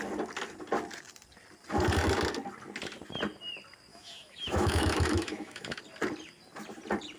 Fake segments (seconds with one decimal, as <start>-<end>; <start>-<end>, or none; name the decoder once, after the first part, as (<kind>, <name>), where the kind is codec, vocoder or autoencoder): 3.9-5.8 (autoencoder, DAC-VAE)